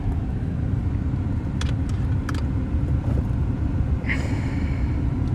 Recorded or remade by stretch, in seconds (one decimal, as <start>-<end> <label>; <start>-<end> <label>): 0.0-5.3 recorded